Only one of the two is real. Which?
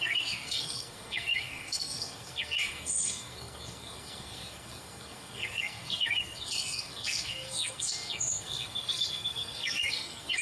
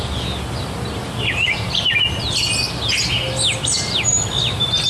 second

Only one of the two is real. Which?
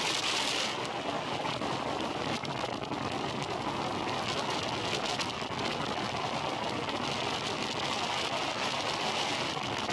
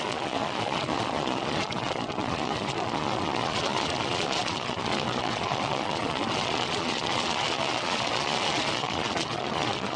first